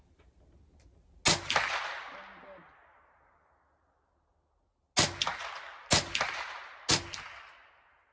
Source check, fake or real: real